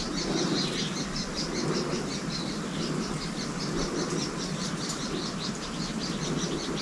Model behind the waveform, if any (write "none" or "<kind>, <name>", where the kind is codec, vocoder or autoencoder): none